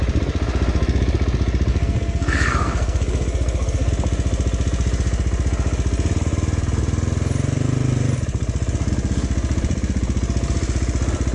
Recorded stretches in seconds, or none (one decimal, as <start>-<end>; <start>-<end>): 0.0-1.7; 3.9-11.3